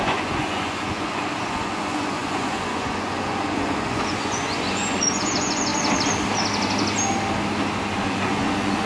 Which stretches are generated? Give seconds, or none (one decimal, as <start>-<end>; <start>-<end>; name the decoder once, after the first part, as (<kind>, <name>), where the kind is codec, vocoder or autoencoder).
0.0-5.7 (vocoder, Vocos); 8.0-8.9